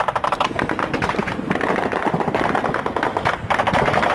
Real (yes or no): yes